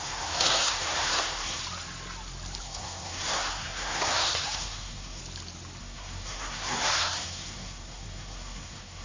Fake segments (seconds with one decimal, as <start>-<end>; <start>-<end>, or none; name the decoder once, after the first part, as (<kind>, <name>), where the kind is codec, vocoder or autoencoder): 0.0-1.6 (codec, SNAC); 2.6-5.2; 5.8-9.0